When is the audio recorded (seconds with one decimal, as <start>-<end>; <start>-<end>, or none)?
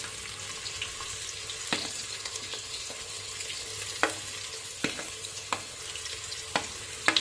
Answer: 0.0-1.8; 3.7-4.5; 5.8-7.2